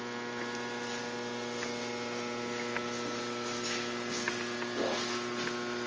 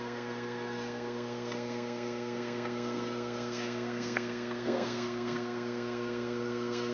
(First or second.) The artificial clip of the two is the second